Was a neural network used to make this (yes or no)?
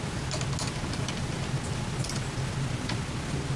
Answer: no